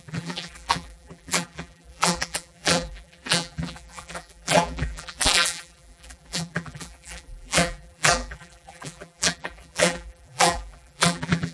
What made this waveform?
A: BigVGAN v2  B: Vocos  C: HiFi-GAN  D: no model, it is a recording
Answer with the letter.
A